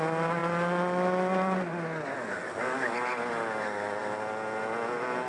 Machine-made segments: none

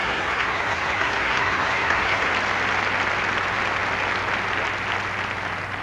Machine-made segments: 0.0-2.3 (codec, SNAC)

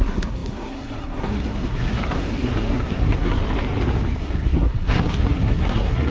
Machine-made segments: 0.0-3.4 (codec, SNAC); 4.2-6.1

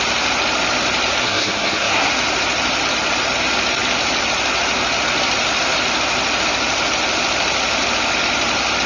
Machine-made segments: 1.2-2.1 (codec, SNAC)

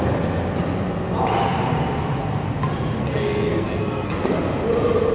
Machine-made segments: 3.0-4.2 (codec, SNAC)

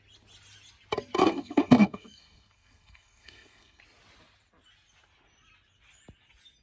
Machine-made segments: 1.2-3.8 (codec, SNAC)